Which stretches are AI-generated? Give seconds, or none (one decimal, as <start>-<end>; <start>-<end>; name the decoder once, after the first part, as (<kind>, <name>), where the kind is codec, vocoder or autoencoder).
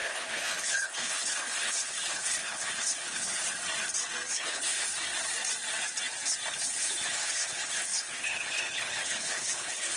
0.0-3.4 (codec, HILCodec); 4.3-4.9; 6.5-10.0